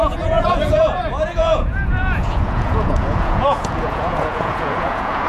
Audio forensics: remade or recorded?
remade